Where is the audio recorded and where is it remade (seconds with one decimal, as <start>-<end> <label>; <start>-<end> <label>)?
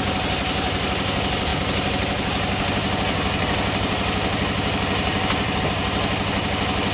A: 0.0-6.9 recorded